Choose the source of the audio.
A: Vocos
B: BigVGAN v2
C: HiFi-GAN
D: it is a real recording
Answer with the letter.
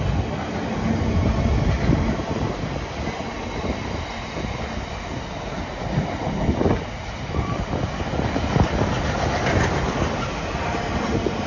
D